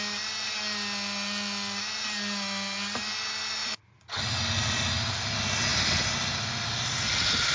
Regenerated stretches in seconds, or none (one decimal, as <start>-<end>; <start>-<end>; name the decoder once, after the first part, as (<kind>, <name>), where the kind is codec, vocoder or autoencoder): 3.6-4.2 (vocoder, Vocos)